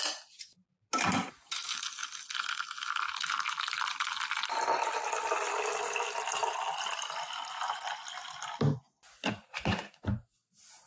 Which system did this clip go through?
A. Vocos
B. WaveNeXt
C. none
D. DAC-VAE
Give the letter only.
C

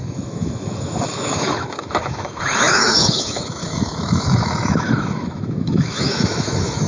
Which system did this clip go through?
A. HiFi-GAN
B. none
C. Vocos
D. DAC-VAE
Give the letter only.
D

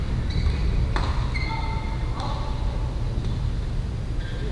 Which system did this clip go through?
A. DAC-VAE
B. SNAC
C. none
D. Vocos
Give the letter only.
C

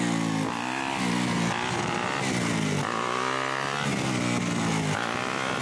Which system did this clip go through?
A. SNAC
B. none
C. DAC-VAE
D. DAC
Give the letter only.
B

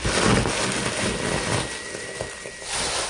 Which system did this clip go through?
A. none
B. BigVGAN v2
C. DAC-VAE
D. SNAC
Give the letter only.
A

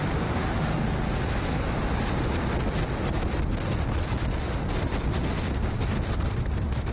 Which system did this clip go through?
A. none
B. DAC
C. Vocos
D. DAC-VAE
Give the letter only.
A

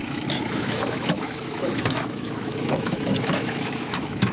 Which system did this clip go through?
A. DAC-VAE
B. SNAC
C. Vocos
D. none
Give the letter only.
A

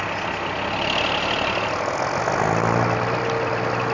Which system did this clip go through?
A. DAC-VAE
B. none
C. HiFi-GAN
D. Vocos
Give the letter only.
B